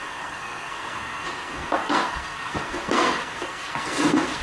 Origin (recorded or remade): remade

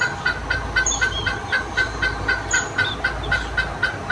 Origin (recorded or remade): recorded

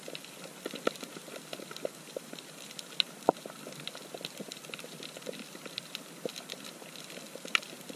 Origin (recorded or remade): recorded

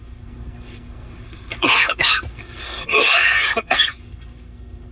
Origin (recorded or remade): remade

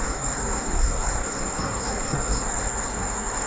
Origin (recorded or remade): remade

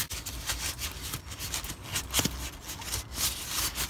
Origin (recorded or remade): recorded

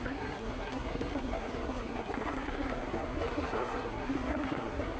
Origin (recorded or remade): remade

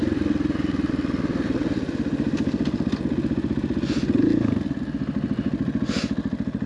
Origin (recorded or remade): recorded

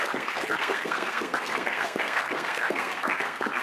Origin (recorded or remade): remade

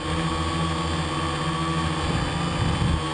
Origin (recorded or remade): recorded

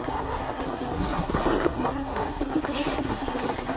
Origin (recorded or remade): remade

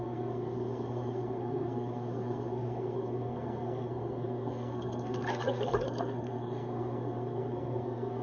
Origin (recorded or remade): remade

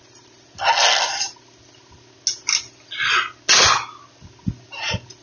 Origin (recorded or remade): recorded